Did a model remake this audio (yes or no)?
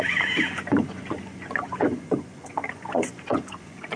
yes